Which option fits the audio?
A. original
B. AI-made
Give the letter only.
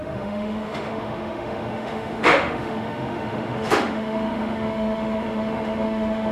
B